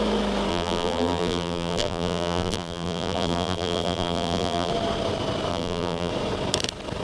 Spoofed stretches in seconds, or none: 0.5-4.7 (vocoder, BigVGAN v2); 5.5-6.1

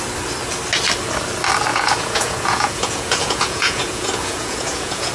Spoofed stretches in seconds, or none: 1.7-5.1 (vocoder, Vocos)

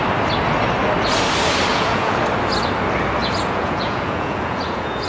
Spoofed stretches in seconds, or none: 1.7-2.2 (vocoder, Vocos); 3.2-5.1

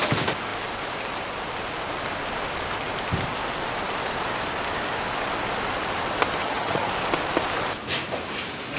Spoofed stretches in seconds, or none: 6.4-6.9 (vocoder, HiFi-GAN)

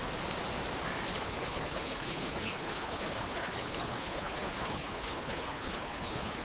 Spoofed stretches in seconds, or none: 1.2-6.4 (codec, HILCodec)

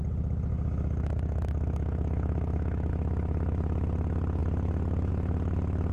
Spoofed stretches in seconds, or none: 0.5-2.9 (autoencoder, DAC-VAE)